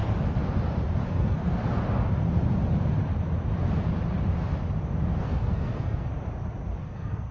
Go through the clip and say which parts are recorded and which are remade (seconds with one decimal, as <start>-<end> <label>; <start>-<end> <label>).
0.0-1.1 recorded; 1.1-1.6 remade; 1.6-5.2 recorded; 5.2-6.1 remade; 6.1-6.8 recorded; 6.8-7.3 remade